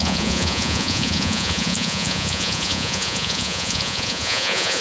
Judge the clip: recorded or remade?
remade